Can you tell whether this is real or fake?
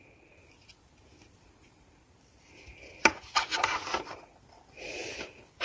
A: real